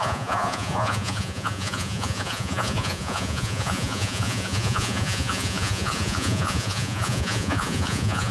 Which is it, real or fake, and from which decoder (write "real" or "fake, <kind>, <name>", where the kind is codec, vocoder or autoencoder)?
fake, vocoder, Vocos